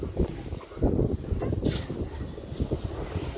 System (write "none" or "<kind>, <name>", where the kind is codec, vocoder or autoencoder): none